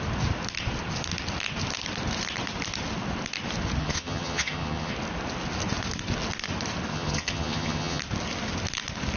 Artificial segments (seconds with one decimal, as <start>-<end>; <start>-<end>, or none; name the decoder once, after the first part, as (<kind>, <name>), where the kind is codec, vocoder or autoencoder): 3.8-4.9 (vocoder, HiFi-GAN); 6.9-8.0